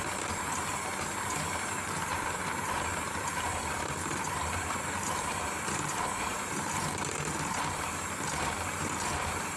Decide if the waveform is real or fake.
fake